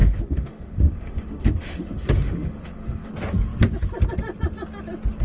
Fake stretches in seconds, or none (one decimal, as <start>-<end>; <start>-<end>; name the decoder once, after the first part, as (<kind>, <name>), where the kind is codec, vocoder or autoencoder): 0.0-3.1 (autoencoder, DAC-VAE)